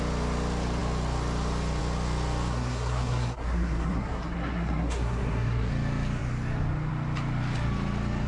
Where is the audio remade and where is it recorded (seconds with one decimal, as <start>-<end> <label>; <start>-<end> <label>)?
0.0-2.5 recorded; 2.5-5.7 remade; 5.7-8.3 recorded